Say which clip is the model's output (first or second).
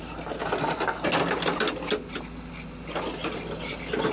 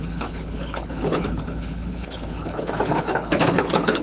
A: second